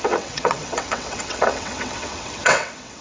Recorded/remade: remade